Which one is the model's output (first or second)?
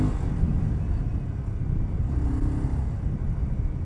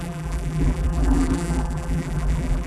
second